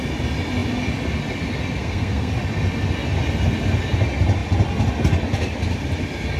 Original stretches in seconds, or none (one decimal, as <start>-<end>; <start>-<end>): 0.0-1.8; 2.3-6.4